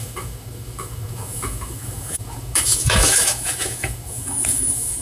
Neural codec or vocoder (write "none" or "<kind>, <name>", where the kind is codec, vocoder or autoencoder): autoencoder, DAC-VAE